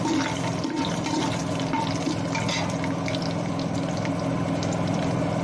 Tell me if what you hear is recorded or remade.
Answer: recorded